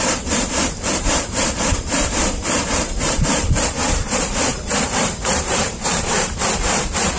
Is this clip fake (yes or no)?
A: yes